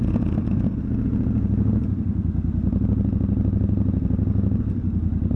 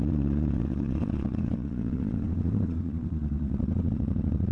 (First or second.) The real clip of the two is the first